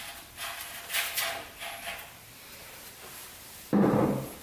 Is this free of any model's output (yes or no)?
yes